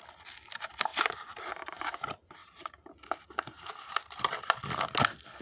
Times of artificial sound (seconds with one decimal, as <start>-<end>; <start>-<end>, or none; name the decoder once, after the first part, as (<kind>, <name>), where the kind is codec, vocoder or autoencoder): 0.9-1.5 (vocoder, BigVGAN v2); 2.4-4.8